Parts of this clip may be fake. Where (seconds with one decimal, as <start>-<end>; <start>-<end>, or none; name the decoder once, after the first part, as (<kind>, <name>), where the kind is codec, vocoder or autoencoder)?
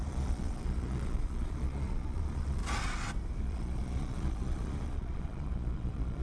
0.0-2.6 (vocoder, Vocos); 3.4-6.2